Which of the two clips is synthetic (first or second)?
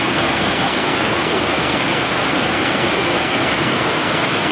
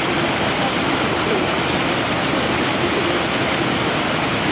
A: first